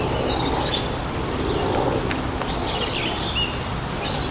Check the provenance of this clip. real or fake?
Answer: real